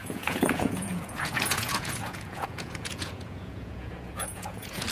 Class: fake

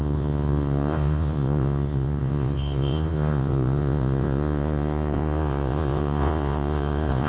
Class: fake